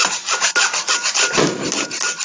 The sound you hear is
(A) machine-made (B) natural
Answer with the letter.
B